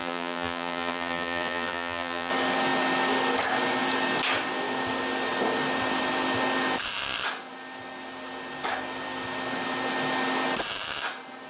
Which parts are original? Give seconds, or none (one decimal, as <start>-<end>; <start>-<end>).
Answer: 2.3-11.5